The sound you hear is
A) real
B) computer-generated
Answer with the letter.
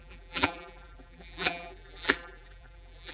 B